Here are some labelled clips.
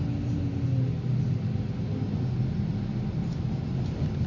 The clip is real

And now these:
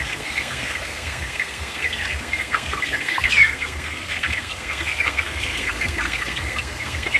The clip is fake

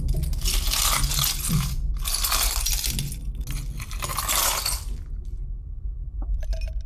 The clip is real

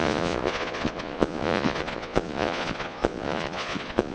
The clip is fake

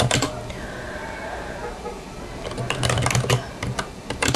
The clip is real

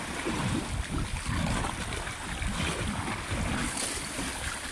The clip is real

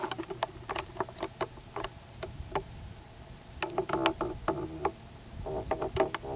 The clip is real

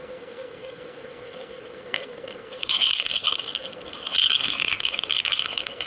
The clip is fake